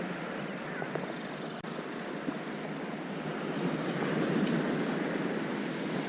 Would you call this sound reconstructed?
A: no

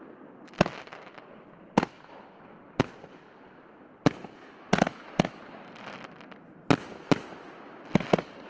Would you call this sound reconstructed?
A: no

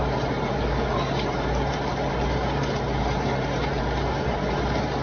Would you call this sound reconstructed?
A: yes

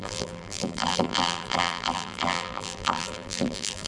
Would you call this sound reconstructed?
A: yes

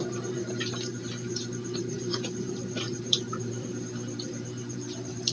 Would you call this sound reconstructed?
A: yes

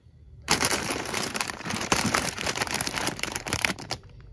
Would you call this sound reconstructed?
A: yes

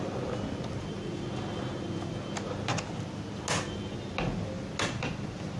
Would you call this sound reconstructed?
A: no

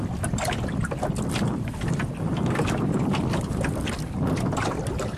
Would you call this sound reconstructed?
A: no